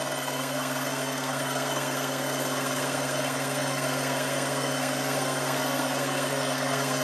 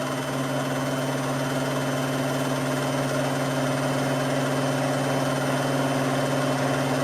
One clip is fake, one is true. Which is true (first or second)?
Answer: second